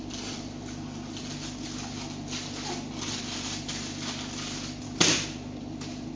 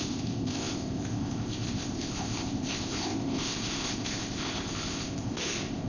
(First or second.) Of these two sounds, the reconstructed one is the second